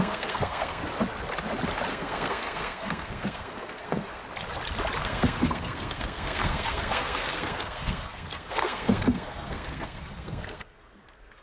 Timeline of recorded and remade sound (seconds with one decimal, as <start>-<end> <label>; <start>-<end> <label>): 0.0-0.8 remade; 0.8-1.9 recorded; 1.9-4.2 remade; 4.2-5.0 recorded; 5.0-11.4 remade